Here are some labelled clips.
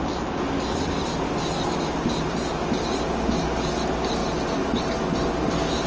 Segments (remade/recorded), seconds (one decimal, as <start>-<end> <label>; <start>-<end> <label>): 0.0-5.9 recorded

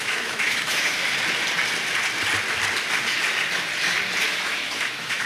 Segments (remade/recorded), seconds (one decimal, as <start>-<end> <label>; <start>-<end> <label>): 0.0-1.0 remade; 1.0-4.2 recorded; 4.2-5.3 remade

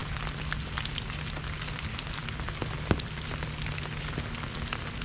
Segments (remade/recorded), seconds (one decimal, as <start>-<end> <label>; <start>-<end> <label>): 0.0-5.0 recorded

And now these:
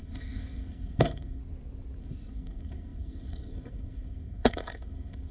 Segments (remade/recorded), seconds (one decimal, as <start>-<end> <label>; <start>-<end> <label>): 0.0-1.4 remade; 1.4-2.0 recorded; 2.0-5.3 remade